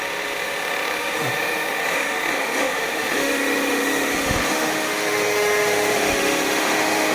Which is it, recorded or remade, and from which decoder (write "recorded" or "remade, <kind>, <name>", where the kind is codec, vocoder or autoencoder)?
remade, autoencoder, DAC-VAE